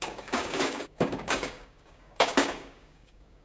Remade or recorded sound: remade